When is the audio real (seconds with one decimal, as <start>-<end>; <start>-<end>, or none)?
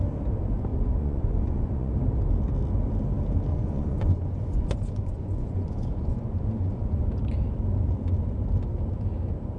0.0-0.7; 1.9-3.5; 7.1-9.6